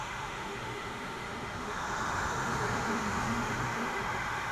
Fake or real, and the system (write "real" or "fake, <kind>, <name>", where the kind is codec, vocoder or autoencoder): fake, autoencoder, DAC-VAE